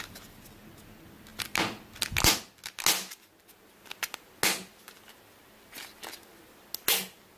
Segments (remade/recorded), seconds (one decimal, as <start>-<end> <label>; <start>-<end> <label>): 0.0-7.4 recorded